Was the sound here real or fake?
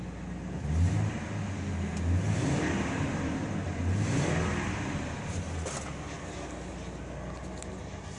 real